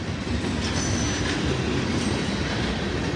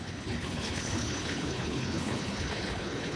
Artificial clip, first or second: second